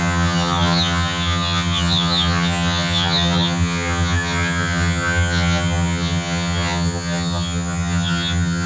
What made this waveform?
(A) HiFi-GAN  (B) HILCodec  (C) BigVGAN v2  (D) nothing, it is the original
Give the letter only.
A